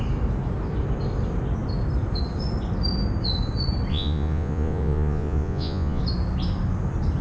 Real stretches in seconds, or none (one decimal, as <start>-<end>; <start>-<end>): 0.0-3.9; 6.0-7.2